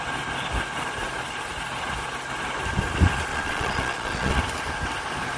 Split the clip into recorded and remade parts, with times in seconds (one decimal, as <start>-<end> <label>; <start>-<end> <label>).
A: 0.0-3.3 recorded; 3.3-4.4 remade; 4.4-5.4 recorded

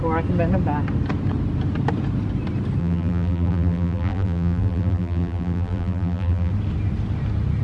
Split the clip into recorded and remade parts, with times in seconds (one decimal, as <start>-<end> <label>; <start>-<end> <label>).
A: 0.0-2.8 recorded; 2.8-6.5 remade; 6.5-7.6 recorded

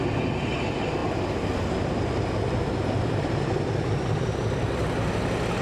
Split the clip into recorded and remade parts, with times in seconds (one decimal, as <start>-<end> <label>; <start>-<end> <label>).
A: 0.0-5.6 recorded

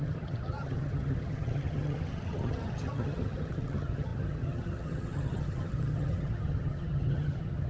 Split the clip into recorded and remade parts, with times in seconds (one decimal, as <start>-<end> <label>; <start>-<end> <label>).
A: 0.0-7.7 remade

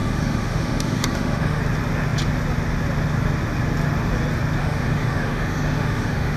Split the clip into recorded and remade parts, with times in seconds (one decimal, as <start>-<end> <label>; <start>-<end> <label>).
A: 0.0-1.6 remade; 1.6-4.6 recorded; 4.6-6.4 remade

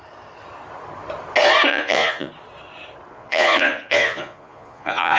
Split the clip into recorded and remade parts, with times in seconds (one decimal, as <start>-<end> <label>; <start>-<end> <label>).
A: 0.0-1.7 recorded; 1.7-2.3 remade; 2.3-3.1 recorded; 3.1-5.2 remade

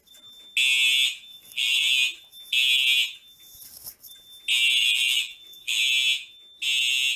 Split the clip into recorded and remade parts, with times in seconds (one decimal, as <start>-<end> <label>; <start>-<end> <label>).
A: 0.0-1.3 recorded; 1.3-1.9 remade; 1.9-4.8 recorded; 4.8-5.8 remade; 5.8-7.2 recorded

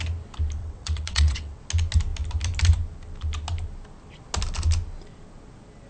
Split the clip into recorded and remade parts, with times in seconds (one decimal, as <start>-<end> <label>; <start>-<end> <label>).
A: 0.0-0.6 recorded; 0.6-1.6 remade; 1.6-5.9 recorded